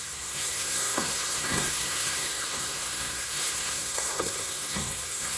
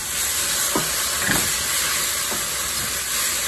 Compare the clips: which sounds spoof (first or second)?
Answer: first